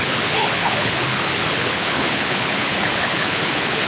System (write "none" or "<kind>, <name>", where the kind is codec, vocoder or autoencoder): codec, HILCodec